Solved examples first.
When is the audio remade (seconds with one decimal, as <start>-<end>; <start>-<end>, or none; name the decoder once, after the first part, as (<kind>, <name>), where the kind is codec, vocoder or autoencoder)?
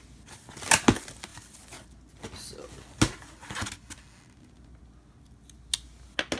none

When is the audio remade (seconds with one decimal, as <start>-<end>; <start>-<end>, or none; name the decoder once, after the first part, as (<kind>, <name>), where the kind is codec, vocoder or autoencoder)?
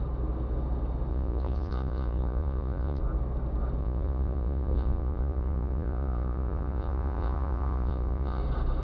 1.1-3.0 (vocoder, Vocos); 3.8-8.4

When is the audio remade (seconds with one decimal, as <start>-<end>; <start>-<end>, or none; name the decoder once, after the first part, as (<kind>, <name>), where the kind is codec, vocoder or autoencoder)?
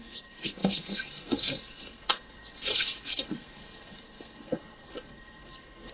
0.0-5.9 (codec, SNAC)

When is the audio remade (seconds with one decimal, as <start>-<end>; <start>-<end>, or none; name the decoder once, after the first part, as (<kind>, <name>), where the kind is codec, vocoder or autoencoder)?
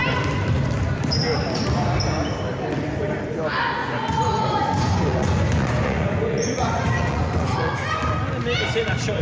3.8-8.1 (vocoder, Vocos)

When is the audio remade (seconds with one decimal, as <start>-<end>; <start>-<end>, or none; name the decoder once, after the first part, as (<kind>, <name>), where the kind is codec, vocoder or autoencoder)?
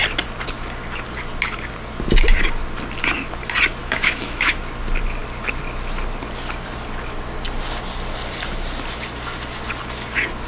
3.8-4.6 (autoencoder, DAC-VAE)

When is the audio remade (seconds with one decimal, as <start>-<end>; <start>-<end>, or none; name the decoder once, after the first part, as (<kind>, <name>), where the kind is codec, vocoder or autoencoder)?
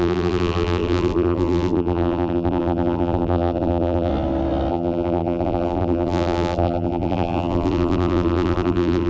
0.0-4.1 (vocoder, BigVGAN v2); 4.7-9.1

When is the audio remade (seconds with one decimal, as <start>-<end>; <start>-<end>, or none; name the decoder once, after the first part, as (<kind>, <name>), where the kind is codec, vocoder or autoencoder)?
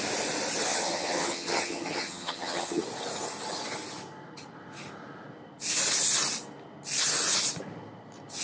0.7-2.8 (vocoder, HiFi-GAN)